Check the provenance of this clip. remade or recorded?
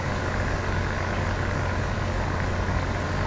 remade